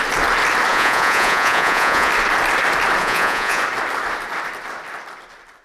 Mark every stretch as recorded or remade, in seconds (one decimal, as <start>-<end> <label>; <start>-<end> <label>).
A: 0.0-0.7 recorded; 0.7-2.1 remade; 2.1-3.0 recorded; 3.0-3.6 remade; 3.6-5.6 recorded